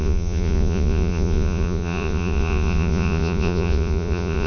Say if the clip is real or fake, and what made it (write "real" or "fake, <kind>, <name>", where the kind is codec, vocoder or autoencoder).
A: fake, vocoder, Vocos